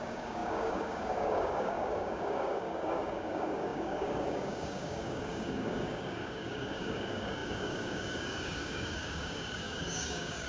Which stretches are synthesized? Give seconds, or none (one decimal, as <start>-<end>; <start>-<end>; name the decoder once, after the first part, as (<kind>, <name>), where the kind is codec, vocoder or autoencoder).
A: 0.0-10.5 (codec, DAC)